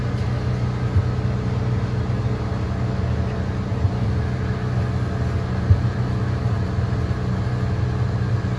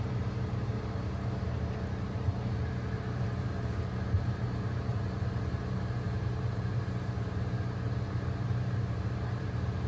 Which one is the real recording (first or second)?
first